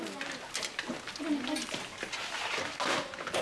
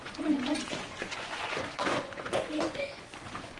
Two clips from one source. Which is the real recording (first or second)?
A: first